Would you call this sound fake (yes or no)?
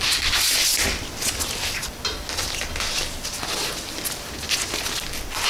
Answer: no